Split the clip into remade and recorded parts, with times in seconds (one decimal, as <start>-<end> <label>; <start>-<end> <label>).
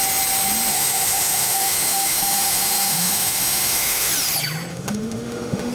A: 0.0-0.7 recorded; 0.7-4.1 remade; 4.1-4.7 recorded; 4.7-5.7 remade